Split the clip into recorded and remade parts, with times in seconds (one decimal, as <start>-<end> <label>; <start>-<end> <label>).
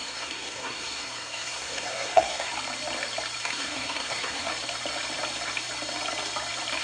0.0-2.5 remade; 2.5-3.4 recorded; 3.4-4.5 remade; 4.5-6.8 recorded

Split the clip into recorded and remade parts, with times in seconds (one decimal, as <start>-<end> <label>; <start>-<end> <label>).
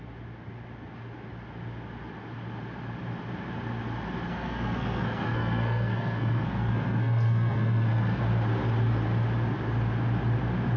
0.0-4.3 recorded; 4.3-8.2 remade; 8.2-10.8 recorded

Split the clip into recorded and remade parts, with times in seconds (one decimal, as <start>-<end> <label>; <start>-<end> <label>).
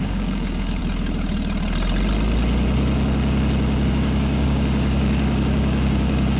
0.0-0.8 remade; 0.8-3.9 recorded; 3.9-6.4 remade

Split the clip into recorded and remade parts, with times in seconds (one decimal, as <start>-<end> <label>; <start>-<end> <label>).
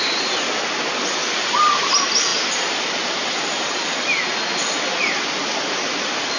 0.0-6.4 recorded